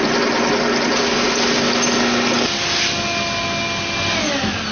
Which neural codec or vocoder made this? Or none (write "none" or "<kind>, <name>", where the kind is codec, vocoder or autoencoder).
none